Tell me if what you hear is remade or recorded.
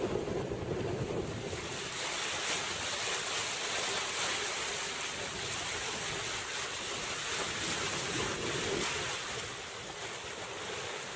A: recorded